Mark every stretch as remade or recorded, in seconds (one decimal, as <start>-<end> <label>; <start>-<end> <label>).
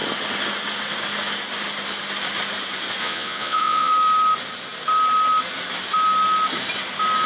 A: 0.0-3.0 recorded; 3.0-3.9 remade; 3.9-7.3 recorded